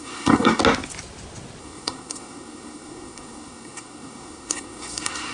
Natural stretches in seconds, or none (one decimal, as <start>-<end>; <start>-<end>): 0.6-1.6